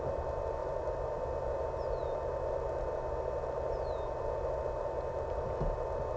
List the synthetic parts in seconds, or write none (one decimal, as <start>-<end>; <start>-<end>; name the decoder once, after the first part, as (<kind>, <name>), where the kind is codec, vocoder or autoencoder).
0.6-1.2 (vocoder, BigVGAN v2)